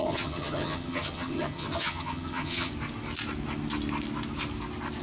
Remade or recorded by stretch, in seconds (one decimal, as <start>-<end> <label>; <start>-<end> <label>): 0.0-2.7 remade; 2.7-5.0 recorded